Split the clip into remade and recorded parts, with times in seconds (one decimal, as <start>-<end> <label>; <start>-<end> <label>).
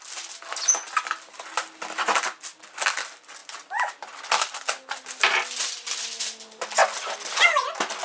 0.0-8.0 recorded